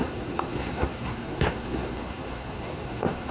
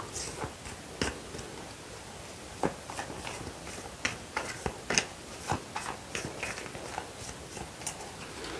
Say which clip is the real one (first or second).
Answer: second